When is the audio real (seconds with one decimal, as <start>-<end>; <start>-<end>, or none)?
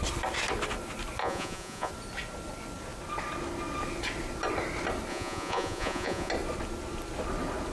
0.0-1.2; 1.9-5.1; 6.3-7.7